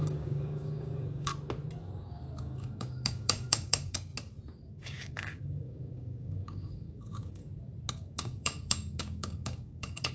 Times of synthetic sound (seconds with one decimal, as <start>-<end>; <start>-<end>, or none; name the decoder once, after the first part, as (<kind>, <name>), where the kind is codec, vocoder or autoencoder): 0.0-1.3 (codec, DAC); 2.4-4.1; 4.7-7.4; 7.9-10.1